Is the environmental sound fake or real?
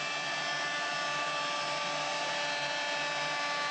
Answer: real